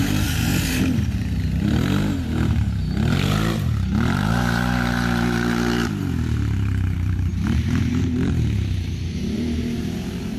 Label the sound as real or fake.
fake